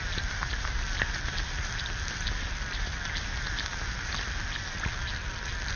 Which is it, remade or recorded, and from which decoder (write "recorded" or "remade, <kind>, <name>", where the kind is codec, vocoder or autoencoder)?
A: recorded